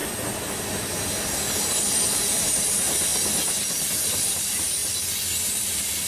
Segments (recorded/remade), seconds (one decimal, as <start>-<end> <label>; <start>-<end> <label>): 0.0-1.8 recorded; 1.8-3.1 remade; 3.1-3.8 recorded; 3.8-4.8 remade; 4.8-5.6 recorded; 5.6-6.1 remade